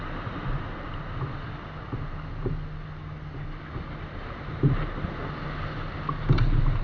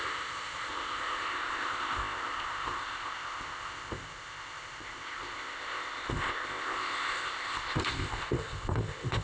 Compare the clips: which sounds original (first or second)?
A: first